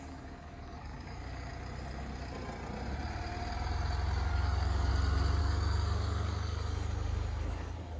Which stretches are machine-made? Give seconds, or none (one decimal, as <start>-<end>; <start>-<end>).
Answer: 0.0-1.5; 4.3-4.9; 5.4-8.0